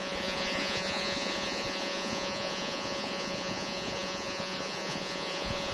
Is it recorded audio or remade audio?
remade